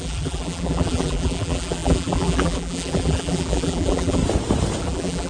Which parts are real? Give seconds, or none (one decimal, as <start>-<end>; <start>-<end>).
4.2-4.8